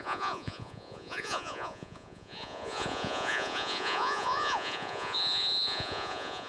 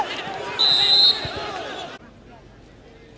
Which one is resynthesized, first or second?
first